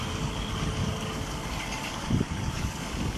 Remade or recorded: remade